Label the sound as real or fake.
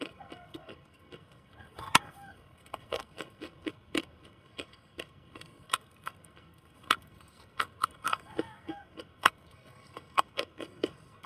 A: fake